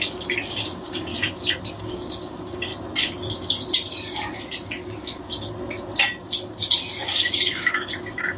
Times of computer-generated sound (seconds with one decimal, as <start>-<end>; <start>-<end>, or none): 0.0-1.1; 1.8-2.7; 7.0-8.4